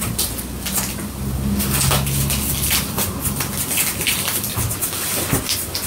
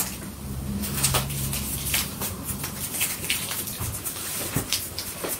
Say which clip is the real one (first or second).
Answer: first